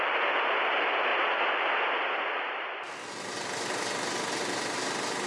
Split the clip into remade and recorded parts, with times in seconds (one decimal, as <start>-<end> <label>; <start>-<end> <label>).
0.0-5.3 recorded